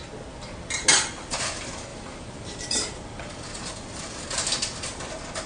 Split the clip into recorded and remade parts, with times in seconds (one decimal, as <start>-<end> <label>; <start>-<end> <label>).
0.0-1.9 recorded; 1.9-3.2 remade; 3.2-5.5 recorded